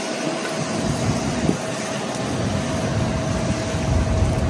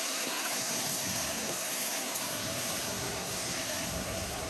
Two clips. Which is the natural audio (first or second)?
first